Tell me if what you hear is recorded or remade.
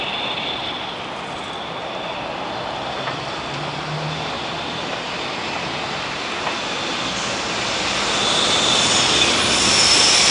recorded